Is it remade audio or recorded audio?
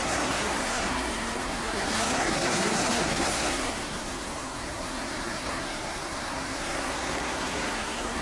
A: remade